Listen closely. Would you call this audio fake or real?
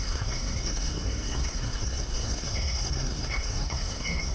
fake